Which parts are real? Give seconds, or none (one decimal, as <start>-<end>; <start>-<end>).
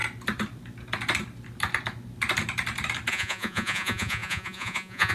0.0-3.1